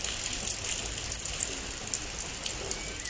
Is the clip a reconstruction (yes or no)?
no